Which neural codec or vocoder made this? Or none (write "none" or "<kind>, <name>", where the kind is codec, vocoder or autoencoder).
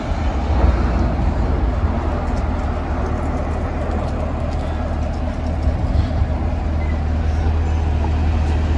none